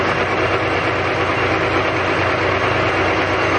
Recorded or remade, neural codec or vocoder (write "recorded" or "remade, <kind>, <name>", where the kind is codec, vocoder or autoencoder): recorded